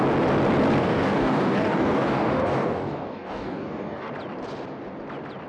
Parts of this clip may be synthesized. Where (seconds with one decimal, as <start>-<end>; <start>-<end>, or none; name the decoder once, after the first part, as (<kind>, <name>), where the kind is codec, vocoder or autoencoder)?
0.8-4.1 (codec, DAC)